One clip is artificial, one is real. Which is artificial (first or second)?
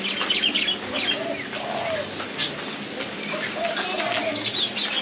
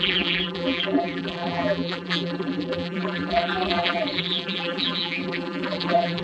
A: second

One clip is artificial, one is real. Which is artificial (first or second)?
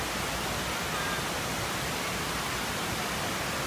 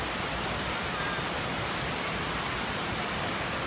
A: second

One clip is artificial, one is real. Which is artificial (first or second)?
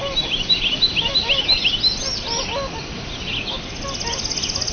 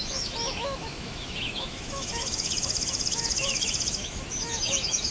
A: second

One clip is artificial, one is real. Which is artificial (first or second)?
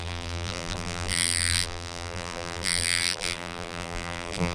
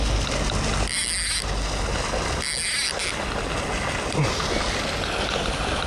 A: first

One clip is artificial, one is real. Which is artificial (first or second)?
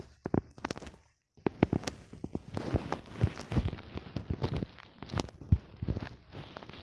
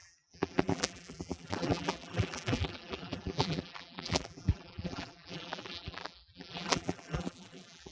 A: second